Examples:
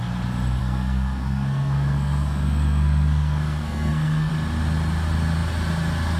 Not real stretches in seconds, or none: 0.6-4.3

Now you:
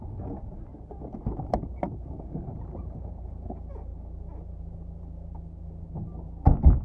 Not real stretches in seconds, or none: 2.5-3.2

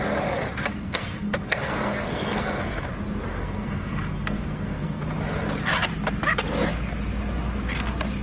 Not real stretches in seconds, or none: 0.7-2.9; 3.3-5.0

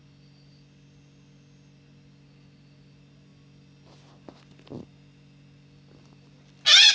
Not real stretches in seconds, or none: none

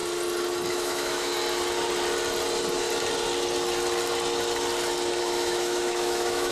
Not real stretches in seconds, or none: 0.7-1.3; 5.2-6.5

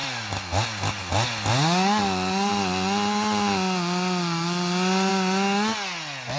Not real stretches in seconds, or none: none

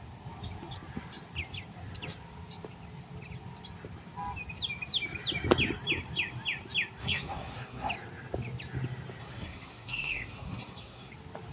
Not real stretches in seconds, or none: 7.0-7.9; 9.2-11.1

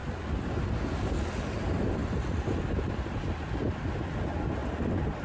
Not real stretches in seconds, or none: none